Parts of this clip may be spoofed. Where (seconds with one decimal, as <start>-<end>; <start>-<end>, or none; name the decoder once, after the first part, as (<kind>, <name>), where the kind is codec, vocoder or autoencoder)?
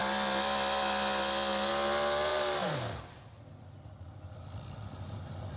2.3-3.2 (vocoder, BigVGAN v2)